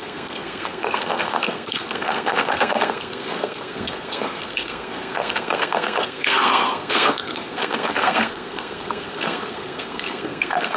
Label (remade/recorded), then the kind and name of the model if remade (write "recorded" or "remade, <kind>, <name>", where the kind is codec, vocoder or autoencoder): remade, codec, SNAC